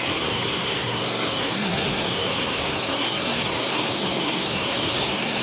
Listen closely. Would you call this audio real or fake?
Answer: fake